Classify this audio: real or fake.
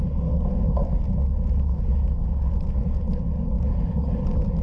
real